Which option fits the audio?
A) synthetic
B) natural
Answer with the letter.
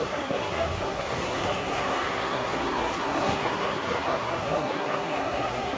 A